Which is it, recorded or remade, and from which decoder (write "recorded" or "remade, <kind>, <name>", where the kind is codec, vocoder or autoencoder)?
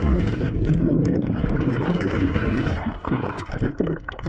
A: remade, codec, SNAC